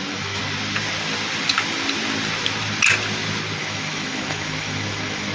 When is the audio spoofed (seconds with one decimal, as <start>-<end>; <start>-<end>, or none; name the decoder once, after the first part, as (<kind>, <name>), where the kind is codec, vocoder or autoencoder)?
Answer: 0.0-0.4 (autoencoder, DAC-VAE); 3.6-5.3